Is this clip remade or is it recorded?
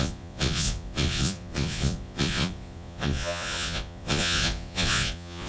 remade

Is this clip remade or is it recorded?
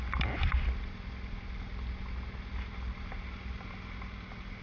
recorded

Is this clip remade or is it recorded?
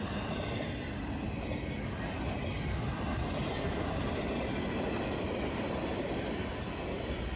recorded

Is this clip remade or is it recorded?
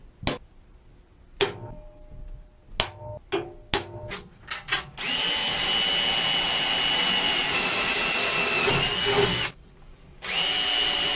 recorded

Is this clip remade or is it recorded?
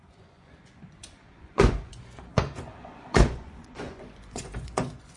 remade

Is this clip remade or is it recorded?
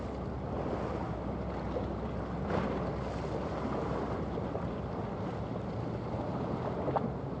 recorded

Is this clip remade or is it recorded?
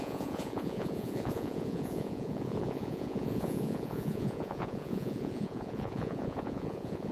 remade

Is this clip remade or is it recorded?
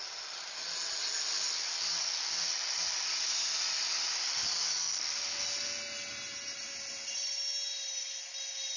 recorded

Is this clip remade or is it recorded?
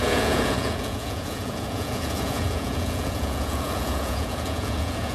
remade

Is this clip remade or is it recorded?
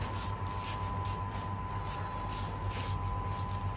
recorded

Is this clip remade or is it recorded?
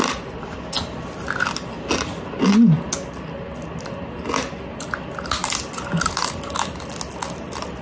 recorded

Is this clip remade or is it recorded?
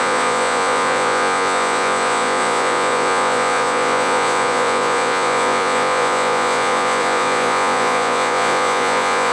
remade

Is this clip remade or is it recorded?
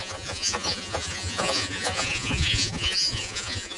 remade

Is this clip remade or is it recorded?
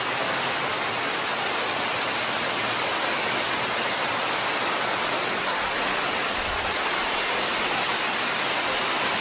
recorded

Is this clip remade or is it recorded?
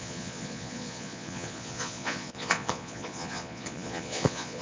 remade